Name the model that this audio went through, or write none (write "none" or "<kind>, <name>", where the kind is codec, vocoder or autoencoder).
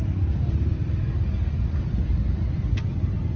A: none